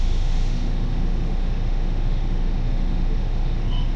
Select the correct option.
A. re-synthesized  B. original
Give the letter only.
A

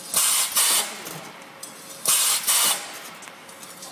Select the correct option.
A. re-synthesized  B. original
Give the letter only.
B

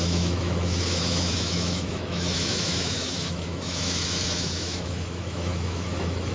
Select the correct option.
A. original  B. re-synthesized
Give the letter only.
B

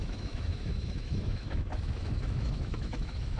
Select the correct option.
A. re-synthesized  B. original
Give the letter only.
A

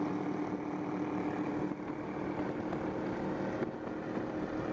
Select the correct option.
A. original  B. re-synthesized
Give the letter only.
A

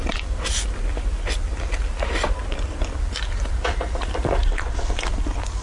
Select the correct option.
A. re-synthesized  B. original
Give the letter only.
B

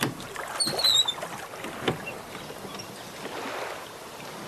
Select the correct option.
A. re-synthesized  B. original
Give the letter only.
B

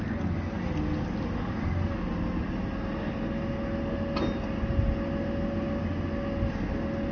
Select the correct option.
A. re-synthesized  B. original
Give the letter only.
B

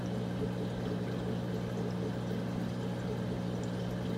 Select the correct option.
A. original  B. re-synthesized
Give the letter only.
A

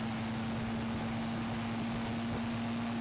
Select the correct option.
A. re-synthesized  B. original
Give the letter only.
B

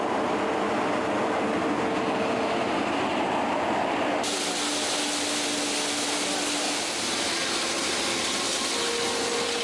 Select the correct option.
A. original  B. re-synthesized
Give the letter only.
A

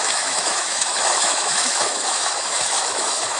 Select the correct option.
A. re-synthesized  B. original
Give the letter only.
A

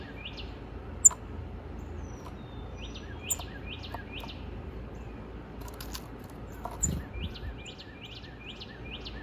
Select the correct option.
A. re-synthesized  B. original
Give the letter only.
B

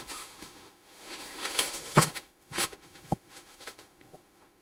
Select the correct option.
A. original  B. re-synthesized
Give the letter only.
B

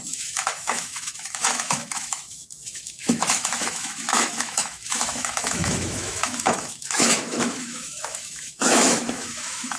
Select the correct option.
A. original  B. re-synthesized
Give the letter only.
B